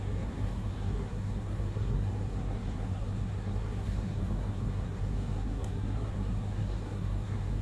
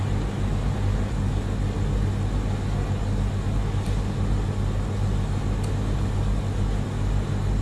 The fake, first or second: first